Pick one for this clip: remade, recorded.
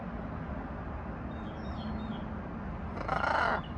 recorded